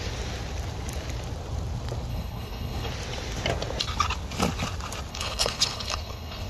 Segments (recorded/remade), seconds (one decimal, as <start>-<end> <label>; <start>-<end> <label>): 0.0-2.1 recorded; 2.1-2.9 remade; 2.9-5.1 recorded; 5.1-6.5 remade